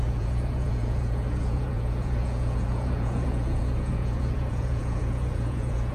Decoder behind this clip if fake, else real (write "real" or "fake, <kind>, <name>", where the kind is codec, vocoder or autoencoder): fake, vocoder, Vocos